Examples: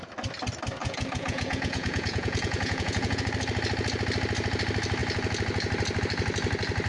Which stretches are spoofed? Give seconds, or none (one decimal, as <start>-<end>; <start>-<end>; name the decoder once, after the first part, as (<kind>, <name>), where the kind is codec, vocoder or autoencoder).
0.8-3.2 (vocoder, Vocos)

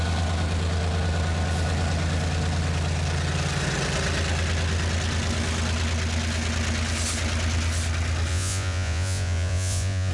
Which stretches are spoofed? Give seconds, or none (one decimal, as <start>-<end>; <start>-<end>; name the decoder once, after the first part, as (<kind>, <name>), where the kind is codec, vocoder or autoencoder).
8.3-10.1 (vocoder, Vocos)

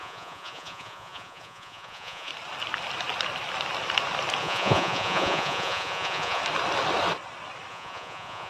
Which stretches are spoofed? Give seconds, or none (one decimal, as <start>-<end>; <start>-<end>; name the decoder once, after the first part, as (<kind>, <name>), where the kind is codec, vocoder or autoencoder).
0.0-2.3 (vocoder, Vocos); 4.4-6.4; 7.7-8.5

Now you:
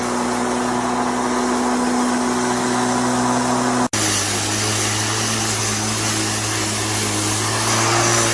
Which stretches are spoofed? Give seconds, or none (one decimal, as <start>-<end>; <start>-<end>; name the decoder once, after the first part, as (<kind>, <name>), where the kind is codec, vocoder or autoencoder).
none

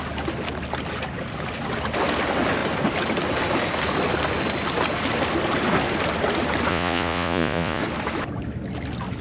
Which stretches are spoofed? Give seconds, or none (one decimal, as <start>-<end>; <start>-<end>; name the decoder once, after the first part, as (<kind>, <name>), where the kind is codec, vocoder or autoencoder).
6.7-7.8 (vocoder, Vocos)

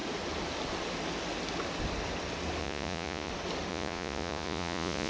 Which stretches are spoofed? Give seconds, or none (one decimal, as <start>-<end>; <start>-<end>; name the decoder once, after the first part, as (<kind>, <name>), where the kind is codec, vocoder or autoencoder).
2.6-3.3 (vocoder, Vocos); 3.7-5.1

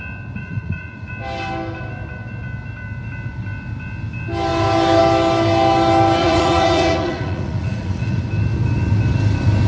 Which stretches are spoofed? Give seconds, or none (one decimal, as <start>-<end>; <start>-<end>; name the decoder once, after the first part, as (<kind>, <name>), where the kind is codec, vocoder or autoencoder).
0.4-1.1 (vocoder, Vocos); 6.2-8.2